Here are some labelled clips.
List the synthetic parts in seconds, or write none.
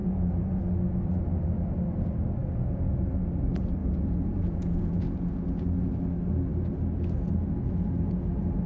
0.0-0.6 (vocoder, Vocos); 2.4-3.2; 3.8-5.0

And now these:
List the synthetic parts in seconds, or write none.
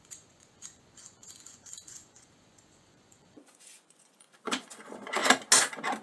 0.0-5.2 (vocoder, Vocos)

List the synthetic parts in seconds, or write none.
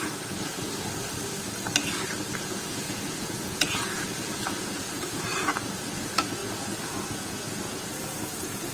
0.0-0.6 (vocoder, Vocos); 2.4-8.7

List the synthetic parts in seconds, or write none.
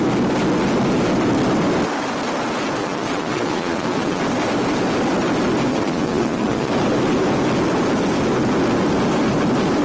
2.8-4.2 (vocoder, Vocos); 5.7-6.7